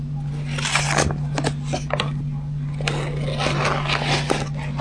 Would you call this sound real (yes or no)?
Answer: yes